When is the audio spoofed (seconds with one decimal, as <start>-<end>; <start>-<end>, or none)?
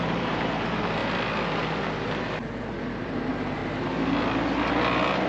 0.0-1.0; 2.8-3.6